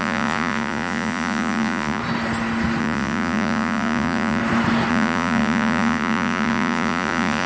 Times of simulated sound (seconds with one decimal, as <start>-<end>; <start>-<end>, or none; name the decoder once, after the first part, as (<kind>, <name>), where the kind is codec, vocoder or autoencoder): 0.0-2.0 (vocoder, Vocos); 2.8-4.4; 4.9-7.5